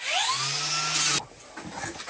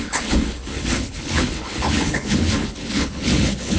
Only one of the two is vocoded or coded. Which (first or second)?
second